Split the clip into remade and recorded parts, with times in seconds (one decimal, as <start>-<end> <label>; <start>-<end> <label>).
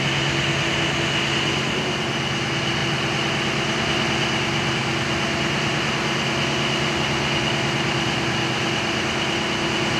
0.0-10.0 recorded